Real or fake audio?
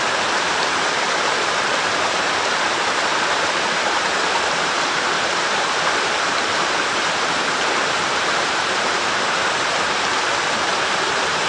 fake